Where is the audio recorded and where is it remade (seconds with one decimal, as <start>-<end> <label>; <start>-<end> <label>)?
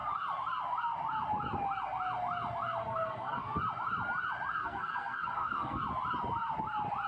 0.0-2.8 recorded; 2.8-3.6 remade; 3.6-4.6 recorded; 4.6-5.8 remade; 5.8-7.1 recorded